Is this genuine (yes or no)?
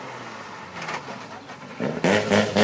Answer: yes